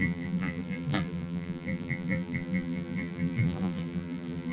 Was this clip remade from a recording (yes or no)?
yes